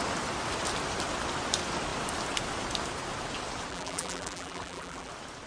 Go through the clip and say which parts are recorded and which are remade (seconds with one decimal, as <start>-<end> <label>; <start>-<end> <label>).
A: 0.0-3.7 recorded; 3.7-5.1 remade; 5.1-5.5 recorded

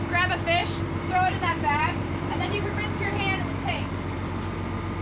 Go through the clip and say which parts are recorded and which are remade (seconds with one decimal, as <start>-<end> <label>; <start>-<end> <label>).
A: 0.0-0.6 recorded; 0.6-2.6 remade; 2.6-5.0 recorded